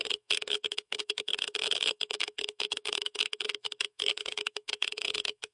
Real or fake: fake